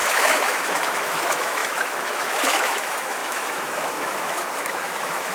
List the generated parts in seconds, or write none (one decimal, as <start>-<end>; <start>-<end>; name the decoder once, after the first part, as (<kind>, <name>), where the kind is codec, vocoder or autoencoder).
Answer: 0.0-5.3 (autoencoder, DAC-VAE)